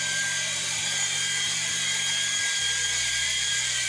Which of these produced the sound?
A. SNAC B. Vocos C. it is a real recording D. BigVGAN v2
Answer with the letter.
D